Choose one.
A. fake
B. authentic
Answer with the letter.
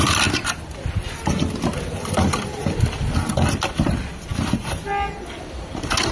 B